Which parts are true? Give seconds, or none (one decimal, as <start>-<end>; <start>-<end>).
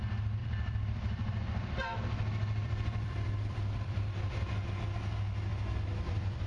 0.0-0.4; 4.3-5.5